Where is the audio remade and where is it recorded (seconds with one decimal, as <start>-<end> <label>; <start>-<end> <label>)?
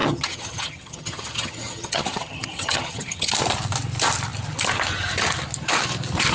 0.0-3.3 remade; 3.3-6.3 recorded